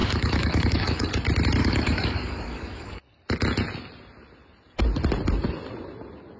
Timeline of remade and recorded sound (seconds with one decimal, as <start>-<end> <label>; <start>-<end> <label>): 0.0-1.1 remade; 1.1-1.6 recorded; 1.6-3.0 remade; 3.0-6.4 recorded